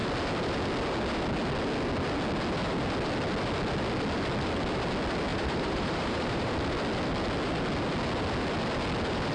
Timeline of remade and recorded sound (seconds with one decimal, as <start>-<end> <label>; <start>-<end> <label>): 0.0-5.3 recorded; 5.3-6.5 remade; 6.5-9.3 recorded